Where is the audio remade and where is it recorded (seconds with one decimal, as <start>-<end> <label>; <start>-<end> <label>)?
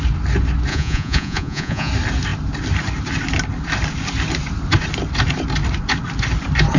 0.0-0.7 recorded; 0.7-1.9 remade; 1.9-6.8 recorded